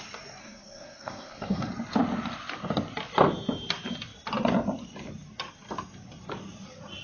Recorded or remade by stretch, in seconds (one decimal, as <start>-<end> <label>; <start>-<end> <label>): 0.0-0.4 recorded; 0.4-1.7 remade; 1.7-7.0 recorded